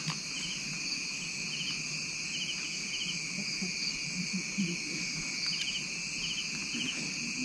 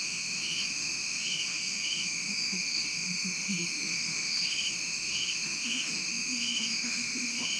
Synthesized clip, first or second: second